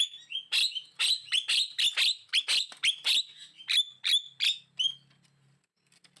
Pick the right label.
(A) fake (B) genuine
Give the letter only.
B